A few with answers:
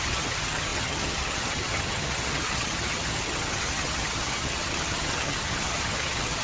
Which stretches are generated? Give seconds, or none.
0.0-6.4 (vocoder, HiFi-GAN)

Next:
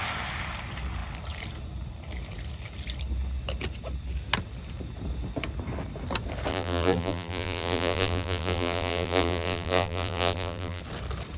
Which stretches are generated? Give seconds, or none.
6.5-10.8 (vocoder, BigVGAN v2)

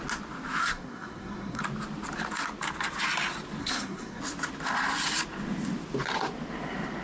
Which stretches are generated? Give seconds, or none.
0.6-1.6 (codec, SNAC); 3.6-4.2

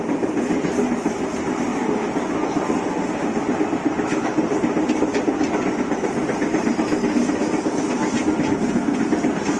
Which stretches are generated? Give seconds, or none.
none

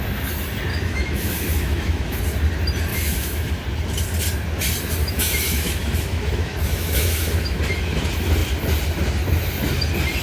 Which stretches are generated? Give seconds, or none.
0.7-2.2 (autoencoder, DAC-VAE); 2.9-3.5; 5.0-7.6

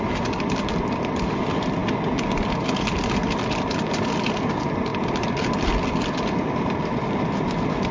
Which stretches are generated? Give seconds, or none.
none